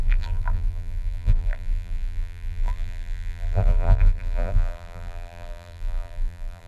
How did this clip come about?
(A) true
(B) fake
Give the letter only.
B